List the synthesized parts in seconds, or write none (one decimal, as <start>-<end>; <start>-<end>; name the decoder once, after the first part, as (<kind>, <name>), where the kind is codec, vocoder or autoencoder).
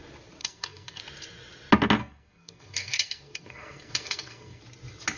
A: 0.4-1.0 (codec, SNAC); 2.0-4.6